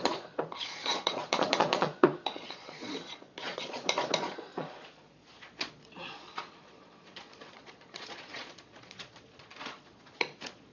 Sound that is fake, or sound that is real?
fake